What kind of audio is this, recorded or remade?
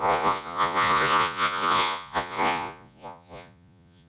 remade